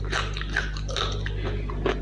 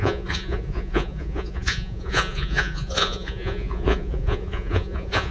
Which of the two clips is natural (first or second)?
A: first